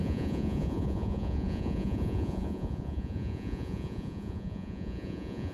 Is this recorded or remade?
remade